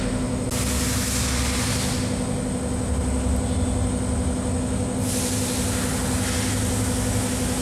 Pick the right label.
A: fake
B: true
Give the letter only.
B